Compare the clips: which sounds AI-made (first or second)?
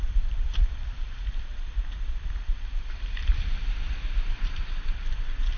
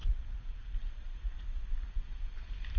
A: first